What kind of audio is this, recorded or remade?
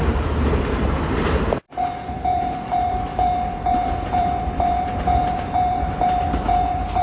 remade